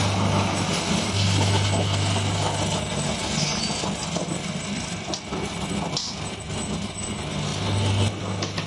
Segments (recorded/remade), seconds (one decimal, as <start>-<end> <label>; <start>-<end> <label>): 0.0-8.7 recorded